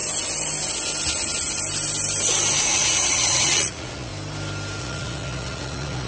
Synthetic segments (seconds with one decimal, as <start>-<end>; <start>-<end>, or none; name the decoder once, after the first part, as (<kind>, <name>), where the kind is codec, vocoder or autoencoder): 2.6-4.1 (vocoder, Vocos); 4.8-6.1